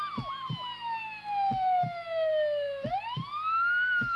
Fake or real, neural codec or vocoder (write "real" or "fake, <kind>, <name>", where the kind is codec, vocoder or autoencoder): real